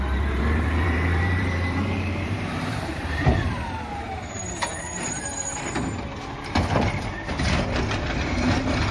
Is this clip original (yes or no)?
no